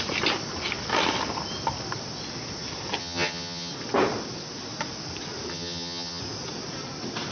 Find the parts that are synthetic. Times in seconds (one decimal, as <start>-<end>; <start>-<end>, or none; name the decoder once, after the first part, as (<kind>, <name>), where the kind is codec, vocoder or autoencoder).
3.0-3.7 (vocoder, HiFi-GAN); 5.5-6.2